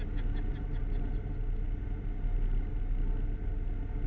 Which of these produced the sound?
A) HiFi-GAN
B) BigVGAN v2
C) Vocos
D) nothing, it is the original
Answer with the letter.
D